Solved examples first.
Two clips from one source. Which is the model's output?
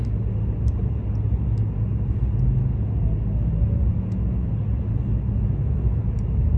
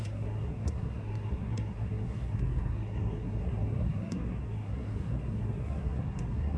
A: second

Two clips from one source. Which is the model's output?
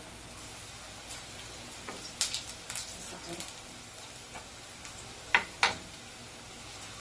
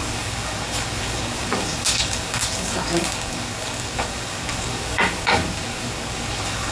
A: second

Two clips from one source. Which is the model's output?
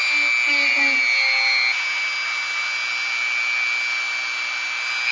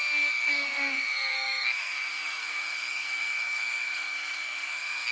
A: second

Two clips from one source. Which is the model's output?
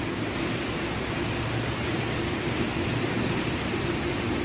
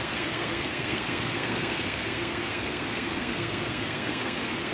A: second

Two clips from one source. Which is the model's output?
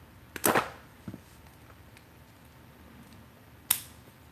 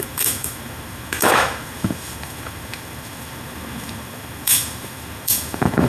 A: second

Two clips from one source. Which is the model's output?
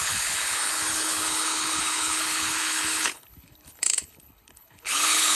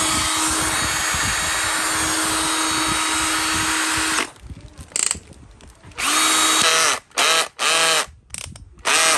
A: first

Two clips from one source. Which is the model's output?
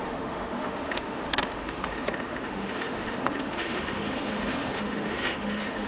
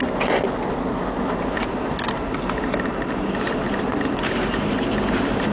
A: first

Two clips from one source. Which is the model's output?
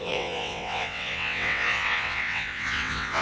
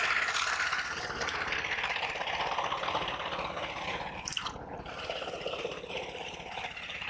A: first